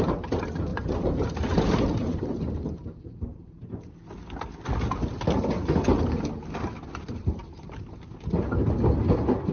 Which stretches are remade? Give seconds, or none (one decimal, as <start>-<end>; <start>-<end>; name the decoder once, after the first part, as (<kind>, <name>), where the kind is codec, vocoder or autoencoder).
0.7-3.7 (vocoder, BigVGAN v2)